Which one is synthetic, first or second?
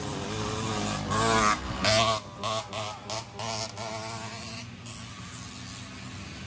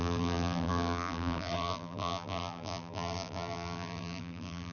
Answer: second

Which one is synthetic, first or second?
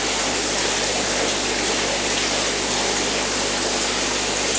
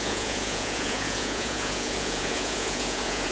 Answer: second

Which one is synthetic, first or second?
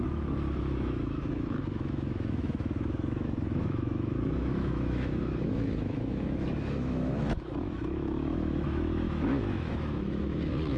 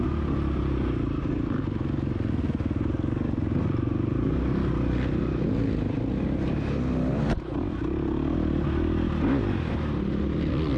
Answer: first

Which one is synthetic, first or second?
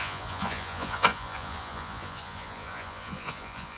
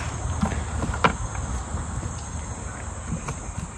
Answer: first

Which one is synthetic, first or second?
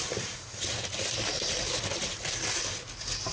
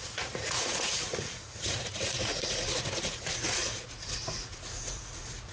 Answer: second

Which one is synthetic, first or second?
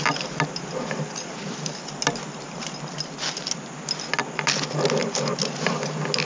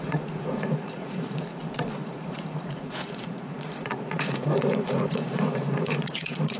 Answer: second